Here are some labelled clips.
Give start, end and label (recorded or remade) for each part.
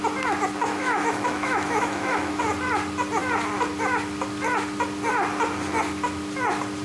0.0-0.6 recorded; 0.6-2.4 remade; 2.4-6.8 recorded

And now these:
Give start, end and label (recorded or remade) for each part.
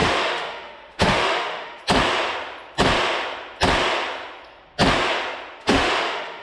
0.0-1.8 remade; 1.8-5.6 recorded; 5.6-6.4 remade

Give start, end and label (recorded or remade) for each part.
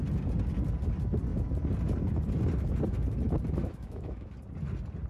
0.0-3.6 recorded; 3.6-4.3 remade; 4.3-5.1 recorded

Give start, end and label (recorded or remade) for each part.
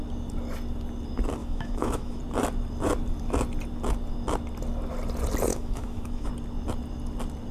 0.0-1.4 recorded; 1.4-2.2 remade; 2.2-5.5 recorded; 5.5-6.3 remade; 6.3-7.5 recorded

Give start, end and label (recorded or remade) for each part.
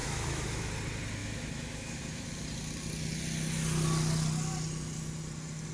0.0-0.7 remade; 0.7-1.2 recorded; 1.2-2.3 remade; 2.3-5.7 recorded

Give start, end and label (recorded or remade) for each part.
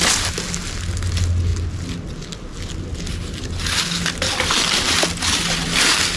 0.0-6.2 recorded